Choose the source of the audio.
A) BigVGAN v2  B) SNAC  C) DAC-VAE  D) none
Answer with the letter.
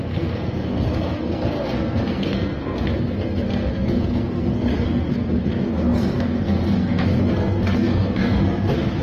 B